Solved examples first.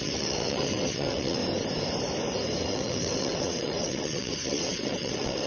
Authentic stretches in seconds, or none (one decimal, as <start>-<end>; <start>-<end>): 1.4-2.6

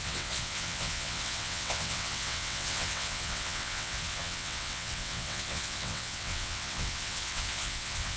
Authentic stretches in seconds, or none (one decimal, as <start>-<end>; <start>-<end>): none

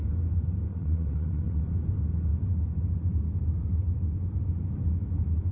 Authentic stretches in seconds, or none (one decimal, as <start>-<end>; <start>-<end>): 0.0-0.7; 1.6-5.5

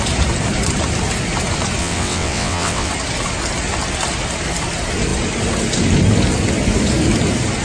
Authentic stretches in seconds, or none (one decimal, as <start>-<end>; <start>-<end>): 0.0-1.8; 2.9-7.6

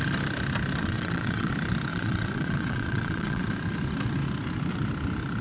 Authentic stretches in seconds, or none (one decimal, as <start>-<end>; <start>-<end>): 0.0-0.8; 1.5-1.9; 3.4-5.4